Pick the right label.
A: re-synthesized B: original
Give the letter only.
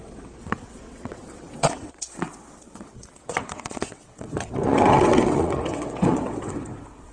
A